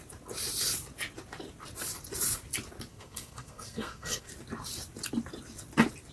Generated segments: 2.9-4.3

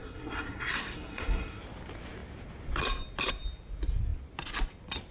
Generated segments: 0.0-1.6

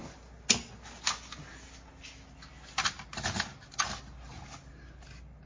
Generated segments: none

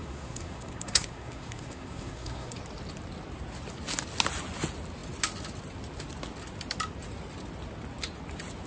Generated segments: 0.0-2.6